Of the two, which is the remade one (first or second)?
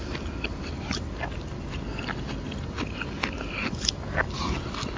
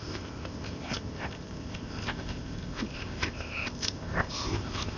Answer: second